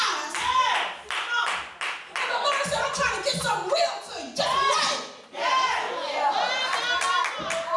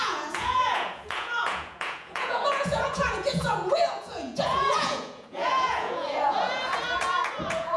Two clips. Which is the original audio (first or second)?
first